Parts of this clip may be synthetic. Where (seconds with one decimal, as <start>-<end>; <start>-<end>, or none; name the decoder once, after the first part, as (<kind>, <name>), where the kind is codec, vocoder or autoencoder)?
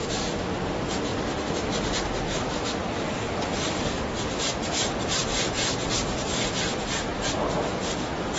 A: none